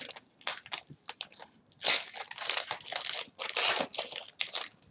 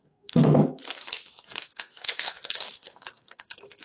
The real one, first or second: first